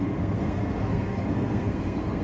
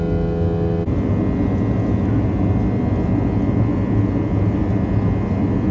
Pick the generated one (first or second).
first